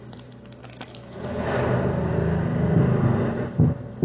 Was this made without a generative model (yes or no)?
yes